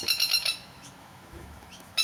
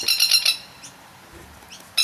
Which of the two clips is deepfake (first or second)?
first